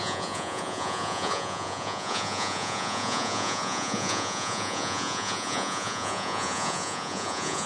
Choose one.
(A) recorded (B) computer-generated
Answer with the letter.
B